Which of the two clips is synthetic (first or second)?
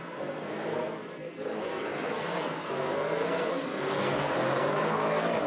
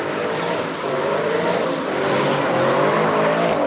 first